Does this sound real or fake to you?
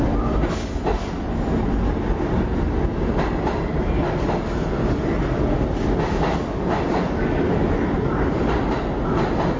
real